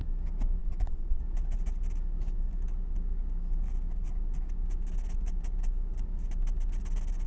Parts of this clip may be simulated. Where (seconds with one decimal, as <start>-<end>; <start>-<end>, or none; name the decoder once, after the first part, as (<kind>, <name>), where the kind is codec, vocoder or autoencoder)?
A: 0.6-1.2 (vocoder, Vocos)